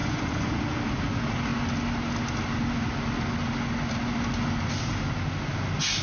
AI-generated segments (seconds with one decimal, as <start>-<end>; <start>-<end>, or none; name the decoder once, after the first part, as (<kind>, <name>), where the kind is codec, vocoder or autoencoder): 0.0-0.6 (vocoder, Vocos)